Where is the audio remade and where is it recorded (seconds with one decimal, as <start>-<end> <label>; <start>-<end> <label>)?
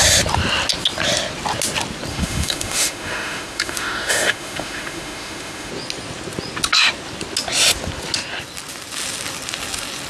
0.0-2.1 recorded; 2.1-5.7 remade; 5.7-10.1 recorded